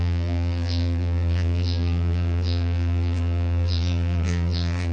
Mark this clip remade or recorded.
remade